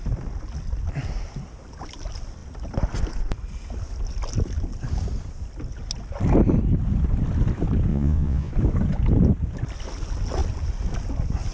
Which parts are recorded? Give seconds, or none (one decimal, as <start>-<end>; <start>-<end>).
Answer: 0.0-7.9; 8.5-11.5